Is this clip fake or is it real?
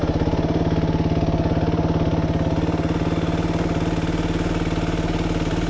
real